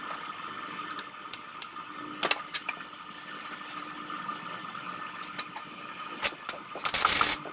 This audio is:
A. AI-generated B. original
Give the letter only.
B